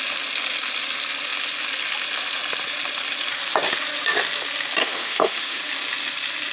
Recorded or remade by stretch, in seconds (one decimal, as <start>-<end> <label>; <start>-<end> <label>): 0.0-4.8 recorded; 4.8-5.6 remade; 5.6-6.5 recorded